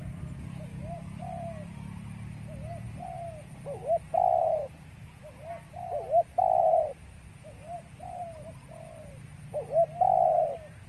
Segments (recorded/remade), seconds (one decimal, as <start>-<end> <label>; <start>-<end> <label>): 0.0-10.9 recorded